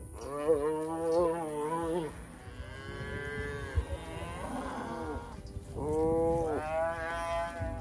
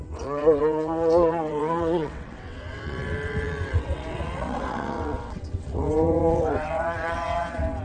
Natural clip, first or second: first